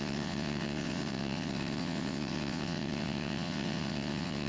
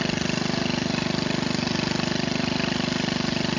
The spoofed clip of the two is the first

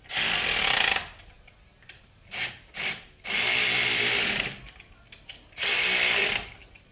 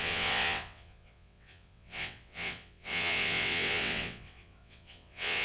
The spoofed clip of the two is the second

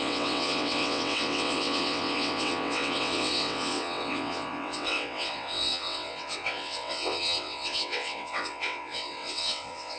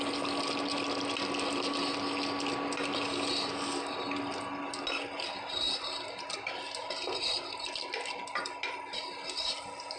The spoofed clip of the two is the first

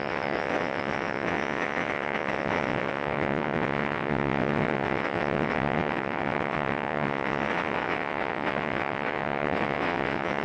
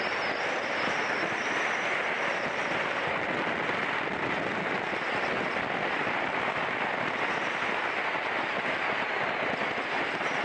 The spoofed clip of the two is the first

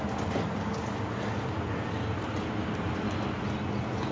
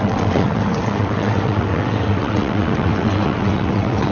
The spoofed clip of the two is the second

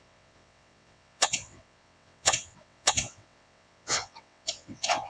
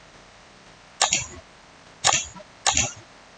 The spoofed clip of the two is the first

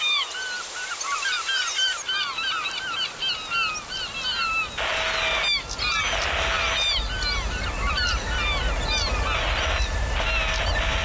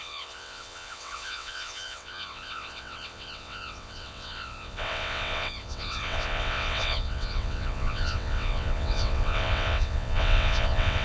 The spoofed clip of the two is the second